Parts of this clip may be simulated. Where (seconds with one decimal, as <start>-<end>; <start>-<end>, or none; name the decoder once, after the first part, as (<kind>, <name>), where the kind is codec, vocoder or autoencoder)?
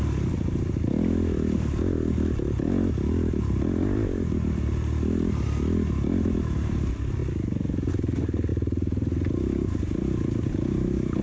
8.5-10.0 (vocoder, BigVGAN v2)